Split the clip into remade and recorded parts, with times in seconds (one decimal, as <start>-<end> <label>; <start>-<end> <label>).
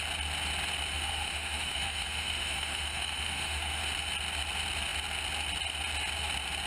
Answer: 0.0-0.9 recorded; 0.9-3.8 remade; 3.8-6.7 recorded